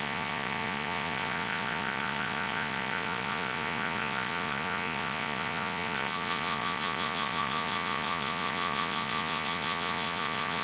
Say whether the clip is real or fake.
fake